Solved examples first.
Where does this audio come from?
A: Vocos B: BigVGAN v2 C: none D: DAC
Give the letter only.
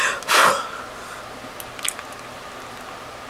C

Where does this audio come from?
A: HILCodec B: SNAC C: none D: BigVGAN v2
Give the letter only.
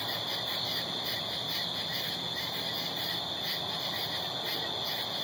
C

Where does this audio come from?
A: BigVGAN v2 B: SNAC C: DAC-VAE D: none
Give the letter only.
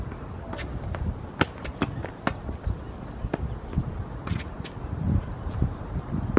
D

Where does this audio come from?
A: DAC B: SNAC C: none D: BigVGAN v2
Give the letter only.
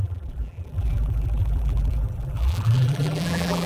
D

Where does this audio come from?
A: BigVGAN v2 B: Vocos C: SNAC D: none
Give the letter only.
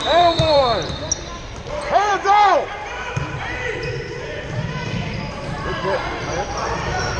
A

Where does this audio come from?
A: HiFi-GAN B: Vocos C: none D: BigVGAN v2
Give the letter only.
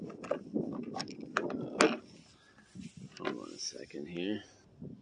C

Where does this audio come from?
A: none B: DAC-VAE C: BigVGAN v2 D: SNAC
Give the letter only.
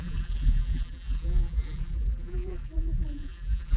C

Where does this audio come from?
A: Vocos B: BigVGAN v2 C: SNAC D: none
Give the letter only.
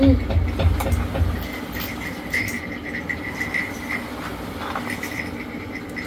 D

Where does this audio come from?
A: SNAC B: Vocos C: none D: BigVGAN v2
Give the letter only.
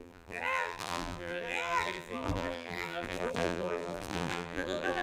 D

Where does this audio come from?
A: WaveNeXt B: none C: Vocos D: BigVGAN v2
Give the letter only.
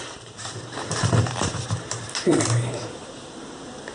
D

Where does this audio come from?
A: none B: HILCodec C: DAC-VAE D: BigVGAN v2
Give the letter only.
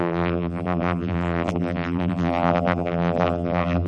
D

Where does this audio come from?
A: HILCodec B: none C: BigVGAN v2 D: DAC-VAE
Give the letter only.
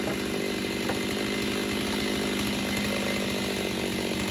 B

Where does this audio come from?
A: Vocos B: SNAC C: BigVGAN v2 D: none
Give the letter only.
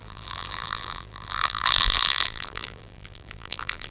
C